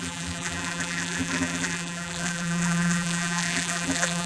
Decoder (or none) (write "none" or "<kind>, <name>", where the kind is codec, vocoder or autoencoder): vocoder, BigVGAN v2